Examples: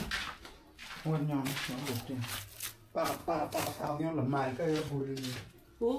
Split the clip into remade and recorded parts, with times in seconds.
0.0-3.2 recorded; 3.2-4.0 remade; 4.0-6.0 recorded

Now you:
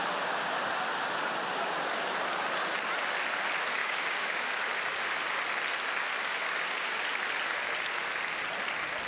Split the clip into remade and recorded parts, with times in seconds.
0.0-3.8 recorded; 3.8-4.5 remade; 4.5-6.4 recorded; 6.4-7.0 remade; 7.0-9.1 recorded